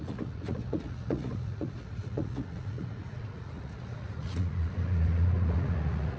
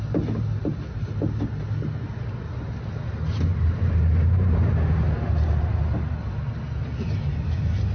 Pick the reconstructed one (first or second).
first